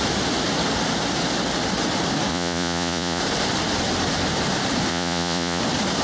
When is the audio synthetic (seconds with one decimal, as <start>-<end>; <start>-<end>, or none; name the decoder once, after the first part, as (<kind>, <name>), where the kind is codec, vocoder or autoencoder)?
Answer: 2.3-3.2 (vocoder, Vocos); 4.9-5.6

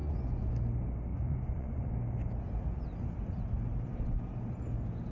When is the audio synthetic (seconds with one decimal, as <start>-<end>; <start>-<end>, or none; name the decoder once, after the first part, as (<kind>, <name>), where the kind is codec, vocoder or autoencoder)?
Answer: 0.0-0.5 (vocoder, Vocos); 1.1-1.9

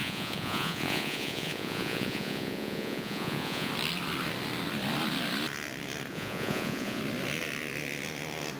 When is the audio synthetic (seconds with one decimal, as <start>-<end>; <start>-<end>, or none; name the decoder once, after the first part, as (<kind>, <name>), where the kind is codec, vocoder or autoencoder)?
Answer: 0.0-3.7 (vocoder, Vocos); 6.1-7.0

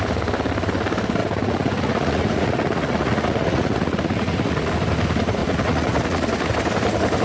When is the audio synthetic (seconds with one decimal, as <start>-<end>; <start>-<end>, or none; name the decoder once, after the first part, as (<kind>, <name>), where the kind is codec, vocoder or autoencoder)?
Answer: 1.2-4.7 (vocoder, Vocos); 5.4-6.5

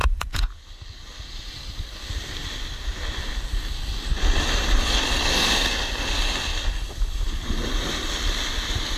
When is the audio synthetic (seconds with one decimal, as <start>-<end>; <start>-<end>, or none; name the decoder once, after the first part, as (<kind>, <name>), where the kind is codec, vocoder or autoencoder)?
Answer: 0.0-0.6 (vocoder, Vocos)

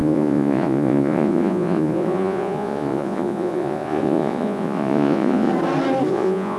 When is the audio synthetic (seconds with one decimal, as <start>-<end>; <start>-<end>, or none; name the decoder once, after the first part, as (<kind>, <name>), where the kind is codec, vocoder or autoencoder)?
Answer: 0.0-5.5 (vocoder, Vocos); 6.1-6.6